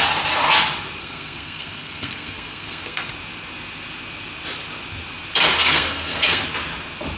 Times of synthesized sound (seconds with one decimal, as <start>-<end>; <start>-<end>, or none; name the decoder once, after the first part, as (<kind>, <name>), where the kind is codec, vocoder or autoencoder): 1.0-3.1 (codec, SNAC); 5.6-6.4